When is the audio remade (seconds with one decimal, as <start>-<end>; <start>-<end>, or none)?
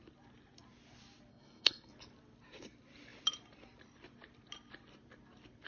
1.3-1.9